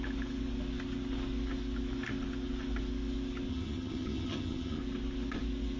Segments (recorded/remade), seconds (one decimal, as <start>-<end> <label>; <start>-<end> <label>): 0.0-3.5 recorded; 3.5-4.8 remade; 4.8-5.8 recorded

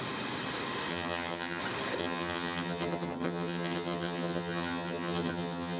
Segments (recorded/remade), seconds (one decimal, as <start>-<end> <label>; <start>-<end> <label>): 0.0-0.9 recorded; 0.9-1.6 remade; 1.6-2.0 recorded; 2.0-5.8 remade

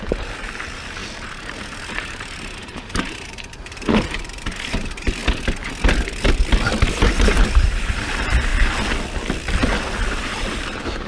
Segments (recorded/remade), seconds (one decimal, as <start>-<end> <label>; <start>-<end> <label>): 0.0-5.2 remade; 5.2-6.9 recorded; 6.9-8.5 remade; 8.5-10.1 recorded; 10.1-11.1 remade

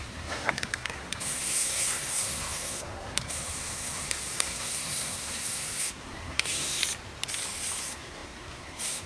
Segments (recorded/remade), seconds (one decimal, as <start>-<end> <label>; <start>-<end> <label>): 0.0-6.8 remade; 6.8-7.8 recorded; 7.8-9.1 remade